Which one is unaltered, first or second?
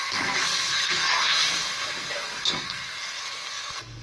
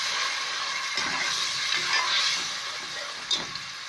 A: second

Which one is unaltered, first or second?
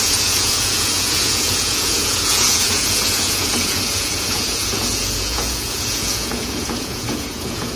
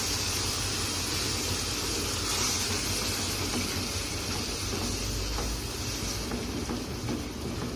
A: second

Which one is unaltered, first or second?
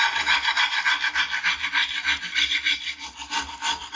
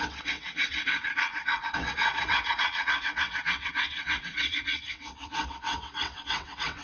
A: first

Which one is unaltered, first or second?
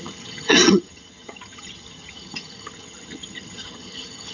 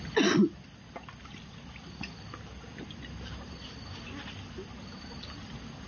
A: second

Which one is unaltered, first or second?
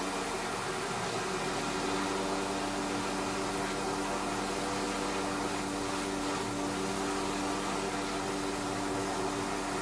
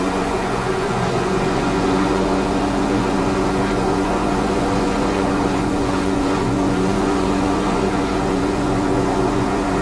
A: first